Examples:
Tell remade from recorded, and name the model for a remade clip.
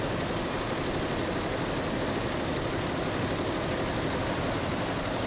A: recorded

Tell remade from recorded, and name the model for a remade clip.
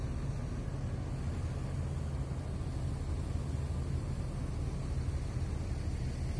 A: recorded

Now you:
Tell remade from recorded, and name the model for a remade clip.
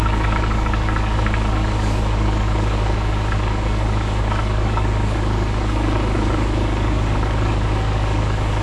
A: remade, codec, DAC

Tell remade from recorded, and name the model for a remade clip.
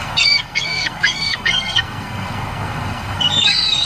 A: remade, codec, SNAC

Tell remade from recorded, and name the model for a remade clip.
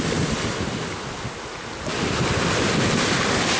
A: recorded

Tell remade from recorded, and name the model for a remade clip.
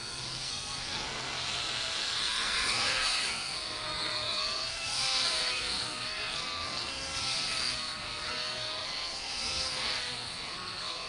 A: remade, codec, SNAC